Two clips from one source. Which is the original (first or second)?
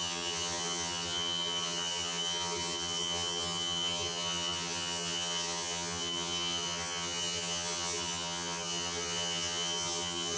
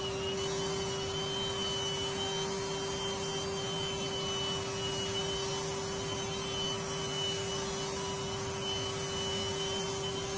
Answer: second